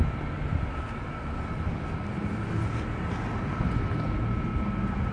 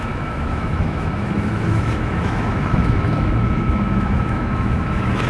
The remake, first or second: second